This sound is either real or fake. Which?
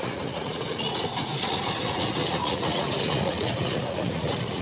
fake